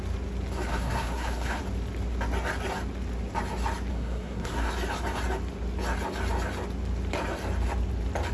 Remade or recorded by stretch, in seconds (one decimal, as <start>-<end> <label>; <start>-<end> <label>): 0.0-0.7 recorded; 0.7-1.6 remade; 1.6-3.9 recorded; 3.9-4.7 remade; 4.7-8.3 recorded